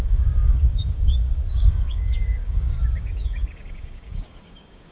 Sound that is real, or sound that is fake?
fake